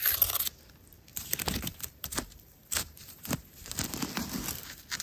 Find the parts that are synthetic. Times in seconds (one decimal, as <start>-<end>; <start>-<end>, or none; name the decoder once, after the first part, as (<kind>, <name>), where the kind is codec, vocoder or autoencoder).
1.1-4.1 (vocoder, BigVGAN v2)